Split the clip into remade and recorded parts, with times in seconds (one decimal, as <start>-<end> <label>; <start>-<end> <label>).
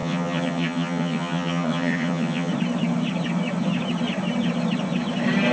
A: 0.0-2.5 remade; 2.5-5.5 recorded